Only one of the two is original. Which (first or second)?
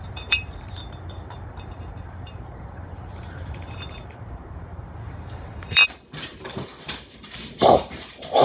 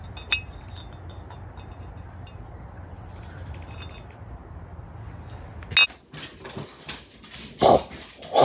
second